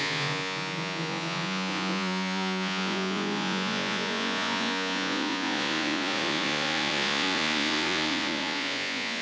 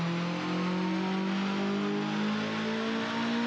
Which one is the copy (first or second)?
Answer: first